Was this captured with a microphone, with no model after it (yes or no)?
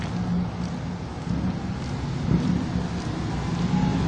yes